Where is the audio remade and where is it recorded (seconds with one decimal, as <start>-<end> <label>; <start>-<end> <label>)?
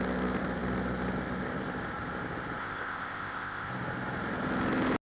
0.0-2.6 recorded; 2.6-3.7 remade; 3.7-5.0 recorded